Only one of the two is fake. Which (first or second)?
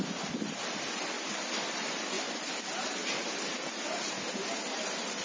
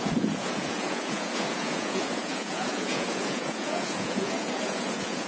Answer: second